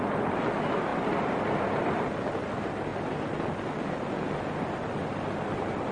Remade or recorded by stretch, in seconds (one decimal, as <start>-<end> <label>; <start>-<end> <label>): 0.0-5.9 recorded